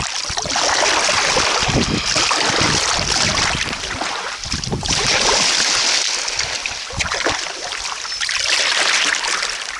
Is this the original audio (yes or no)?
yes